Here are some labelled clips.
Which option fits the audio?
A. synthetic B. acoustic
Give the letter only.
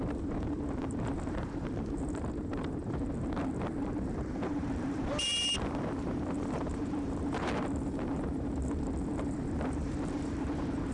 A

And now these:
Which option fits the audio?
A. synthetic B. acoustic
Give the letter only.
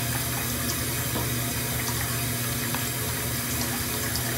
B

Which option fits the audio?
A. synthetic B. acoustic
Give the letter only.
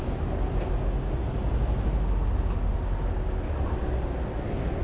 B